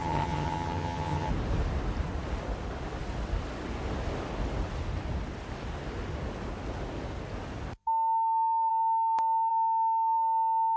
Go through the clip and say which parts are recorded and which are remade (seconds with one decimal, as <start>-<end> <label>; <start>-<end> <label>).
0.0-1.3 remade; 1.3-10.8 recorded

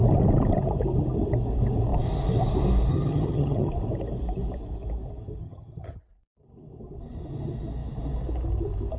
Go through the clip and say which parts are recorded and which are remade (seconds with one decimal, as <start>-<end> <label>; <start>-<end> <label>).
0.0-2.9 recorded; 2.9-3.7 remade; 3.7-5.4 recorded; 5.4-6.0 remade; 6.0-9.0 recorded